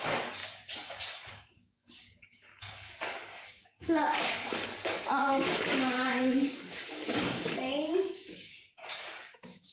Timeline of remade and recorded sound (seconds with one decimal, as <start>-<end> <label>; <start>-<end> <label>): 0.0-9.7 remade